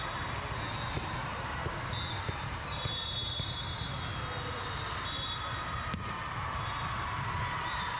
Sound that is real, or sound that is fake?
real